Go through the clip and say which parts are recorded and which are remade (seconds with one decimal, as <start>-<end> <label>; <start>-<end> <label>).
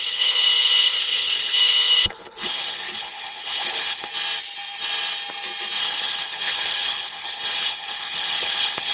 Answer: 0.0-4.1 remade; 4.1-5.8 recorded; 5.8-8.9 remade